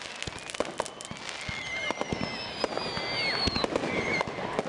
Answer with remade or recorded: recorded